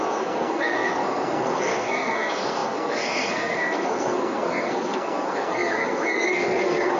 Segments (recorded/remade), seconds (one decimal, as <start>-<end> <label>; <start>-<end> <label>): 0.0-7.0 remade